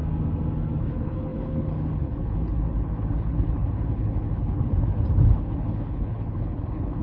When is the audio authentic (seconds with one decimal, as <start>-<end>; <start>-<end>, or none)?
0.0-0.8

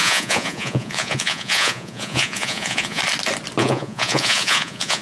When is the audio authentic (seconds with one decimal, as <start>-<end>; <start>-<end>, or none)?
3.0-3.6